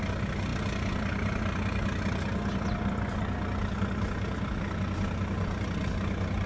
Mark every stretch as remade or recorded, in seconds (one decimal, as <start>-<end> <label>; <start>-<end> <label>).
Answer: 0.0-6.5 recorded